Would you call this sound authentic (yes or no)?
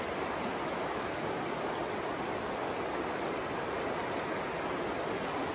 yes